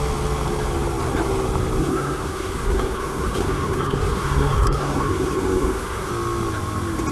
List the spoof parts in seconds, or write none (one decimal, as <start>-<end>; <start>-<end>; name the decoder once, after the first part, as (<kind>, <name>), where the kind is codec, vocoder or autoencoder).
1.8-6.1 (codec, SNAC)

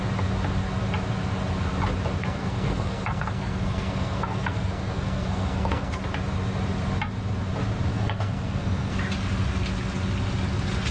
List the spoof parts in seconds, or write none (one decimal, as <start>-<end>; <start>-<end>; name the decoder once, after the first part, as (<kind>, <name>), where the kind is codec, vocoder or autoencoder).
2.2-6.0 (codec, SNAC); 7.9-9.0